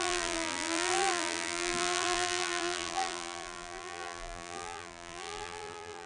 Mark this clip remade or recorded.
remade